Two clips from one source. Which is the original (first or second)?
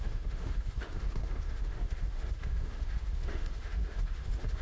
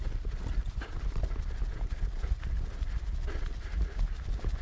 second